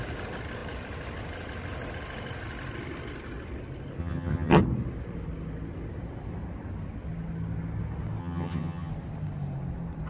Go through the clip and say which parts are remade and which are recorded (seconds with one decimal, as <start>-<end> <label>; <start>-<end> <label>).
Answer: 0.0-4.0 recorded; 4.0-4.6 remade; 4.6-8.2 recorded; 8.2-8.9 remade; 8.9-10.1 recorded